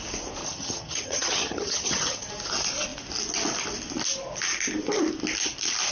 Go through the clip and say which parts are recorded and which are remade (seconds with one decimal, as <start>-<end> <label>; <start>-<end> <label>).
0.0-0.4 recorded; 0.4-2.3 remade; 2.3-5.9 recorded